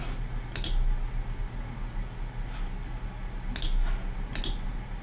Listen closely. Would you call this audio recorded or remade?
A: recorded